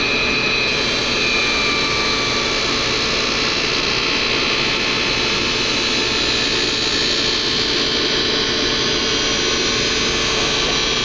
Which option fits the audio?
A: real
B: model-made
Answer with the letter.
A